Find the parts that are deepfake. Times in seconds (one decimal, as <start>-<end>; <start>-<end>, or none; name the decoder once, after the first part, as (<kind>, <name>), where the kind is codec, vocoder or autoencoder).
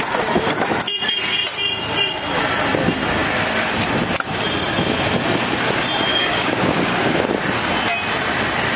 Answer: 6.1-7.3 (codec, DAC)